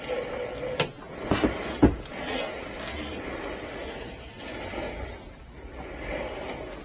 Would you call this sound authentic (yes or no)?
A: yes